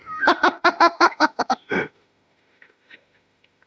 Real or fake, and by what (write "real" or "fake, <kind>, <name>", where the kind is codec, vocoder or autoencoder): fake, autoencoder, DAC-VAE